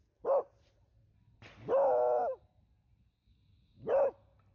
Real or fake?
real